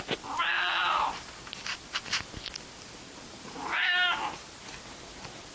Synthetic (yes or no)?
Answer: no